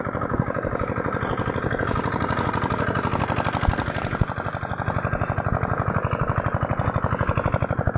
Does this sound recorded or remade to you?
recorded